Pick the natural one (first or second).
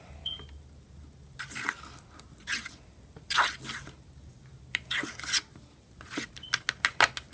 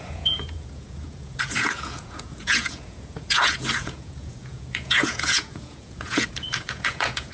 first